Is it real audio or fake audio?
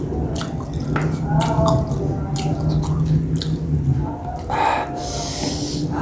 real